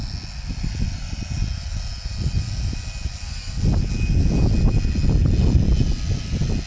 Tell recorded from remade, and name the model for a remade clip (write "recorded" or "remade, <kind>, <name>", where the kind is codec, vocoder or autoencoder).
recorded